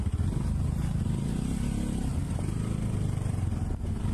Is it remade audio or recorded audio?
recorded